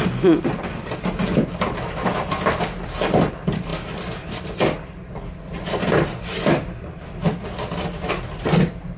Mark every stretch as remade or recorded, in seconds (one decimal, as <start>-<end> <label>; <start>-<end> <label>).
0.0-9.0 recorded